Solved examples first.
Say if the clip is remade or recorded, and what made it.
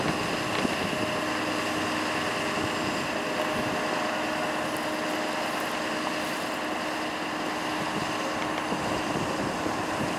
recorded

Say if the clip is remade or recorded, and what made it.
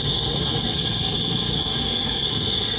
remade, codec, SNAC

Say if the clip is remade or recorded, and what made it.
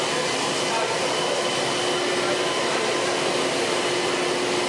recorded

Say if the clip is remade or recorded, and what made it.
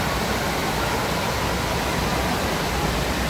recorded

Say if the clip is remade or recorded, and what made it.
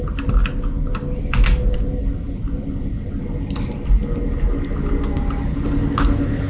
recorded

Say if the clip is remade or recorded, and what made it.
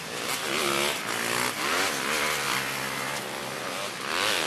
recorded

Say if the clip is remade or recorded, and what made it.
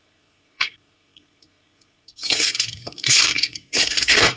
remade, codec, SNAC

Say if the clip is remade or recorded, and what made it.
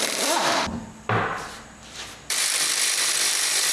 remade, vocoder, BigVGAN v2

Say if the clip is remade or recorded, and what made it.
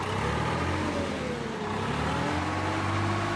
recorded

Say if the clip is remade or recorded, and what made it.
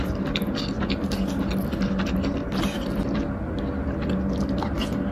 recorded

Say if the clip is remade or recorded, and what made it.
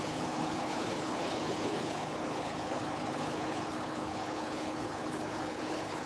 remade, codec, HILCodec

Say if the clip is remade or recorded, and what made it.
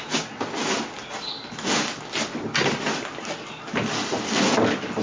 recorded